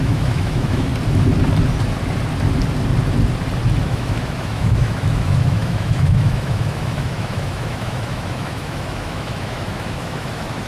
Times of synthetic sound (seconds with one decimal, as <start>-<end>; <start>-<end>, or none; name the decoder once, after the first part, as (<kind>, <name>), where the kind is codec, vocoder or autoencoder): 0.0-0.9 (autoencoder, DAC-VAE); 3.8-10.7